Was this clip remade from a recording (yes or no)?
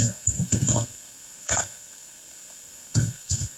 yes